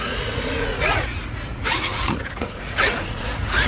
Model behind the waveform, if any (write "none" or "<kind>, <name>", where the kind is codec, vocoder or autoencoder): vocoder, Vocos